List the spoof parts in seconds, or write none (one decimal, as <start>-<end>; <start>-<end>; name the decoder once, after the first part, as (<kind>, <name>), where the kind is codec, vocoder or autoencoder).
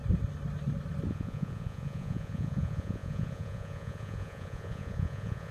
1.1-5.5 (vocoder, Vocos)